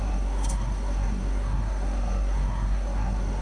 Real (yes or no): no